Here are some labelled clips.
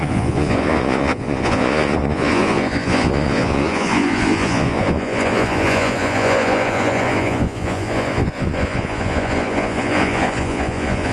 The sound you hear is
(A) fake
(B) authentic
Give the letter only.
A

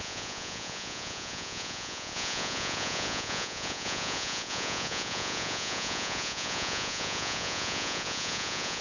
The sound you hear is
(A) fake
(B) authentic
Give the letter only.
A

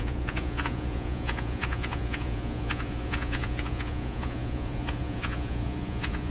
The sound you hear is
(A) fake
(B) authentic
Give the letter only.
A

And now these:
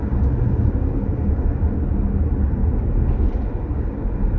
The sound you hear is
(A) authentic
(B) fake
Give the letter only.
A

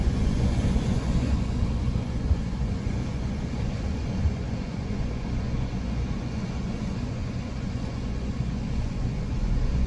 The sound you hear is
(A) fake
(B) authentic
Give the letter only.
A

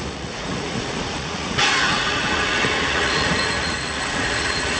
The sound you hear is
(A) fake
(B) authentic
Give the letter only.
A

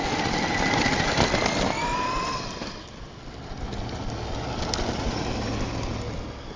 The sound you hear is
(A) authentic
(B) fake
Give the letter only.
A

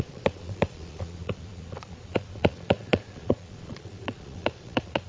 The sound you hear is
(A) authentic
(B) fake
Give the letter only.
B